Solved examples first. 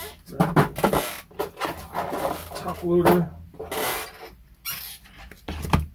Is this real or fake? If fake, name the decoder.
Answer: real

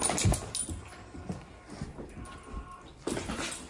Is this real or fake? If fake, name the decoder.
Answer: real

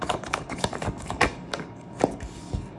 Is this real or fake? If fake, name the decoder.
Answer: fake, codec, DAC